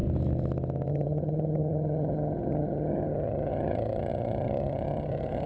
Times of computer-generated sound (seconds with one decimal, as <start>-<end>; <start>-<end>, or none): 0.9-5.5

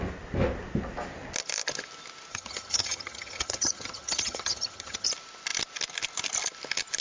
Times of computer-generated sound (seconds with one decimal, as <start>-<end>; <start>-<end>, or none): 2.3-5.1

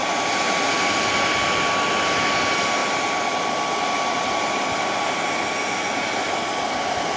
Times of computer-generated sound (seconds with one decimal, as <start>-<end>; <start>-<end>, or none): none